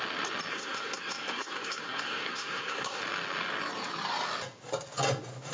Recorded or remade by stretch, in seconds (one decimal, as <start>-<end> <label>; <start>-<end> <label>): 0.0-0.5 recorded; 0.5-3.0 remade; 3.0-5.5 recorded